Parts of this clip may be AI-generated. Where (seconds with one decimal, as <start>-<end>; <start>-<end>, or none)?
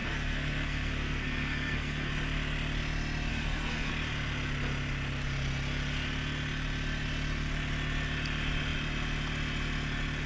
0.0-2.1; 3.3-3.9